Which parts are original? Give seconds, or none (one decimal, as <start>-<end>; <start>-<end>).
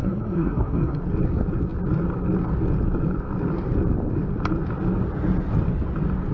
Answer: 1.0-6.3